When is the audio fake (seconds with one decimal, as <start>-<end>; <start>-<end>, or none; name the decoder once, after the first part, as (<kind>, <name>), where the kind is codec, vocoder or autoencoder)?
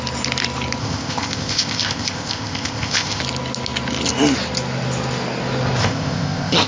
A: 0.8-3.2 (codec, ZipCodec); 5.8-6.7